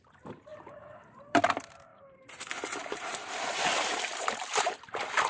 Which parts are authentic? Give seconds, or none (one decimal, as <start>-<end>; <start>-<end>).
0.0-0.5; 1.4-1.9